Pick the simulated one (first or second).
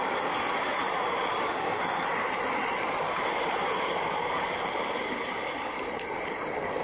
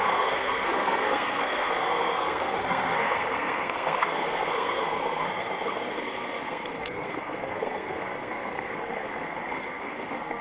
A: second